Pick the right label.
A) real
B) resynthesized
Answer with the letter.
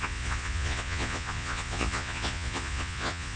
B